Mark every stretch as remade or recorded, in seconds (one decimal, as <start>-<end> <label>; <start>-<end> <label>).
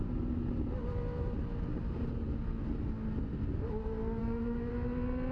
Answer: 0.0-4.2 recorded; 4.2-4.7 remade; 4.7-5.3 recorded